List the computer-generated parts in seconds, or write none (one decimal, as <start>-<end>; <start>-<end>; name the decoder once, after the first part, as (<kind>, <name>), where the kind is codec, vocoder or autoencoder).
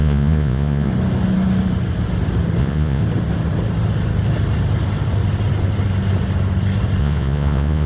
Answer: 0.0-0.9 (vocoder, Vocos); 2.6-3.0; 7.0-7.9